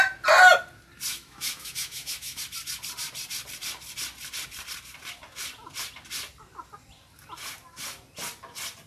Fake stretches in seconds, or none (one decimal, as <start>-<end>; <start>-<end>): 1.1-2.4